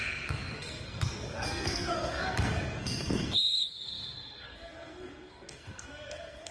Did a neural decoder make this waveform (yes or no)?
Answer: yes